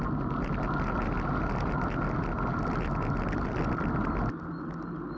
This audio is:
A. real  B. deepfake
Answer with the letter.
A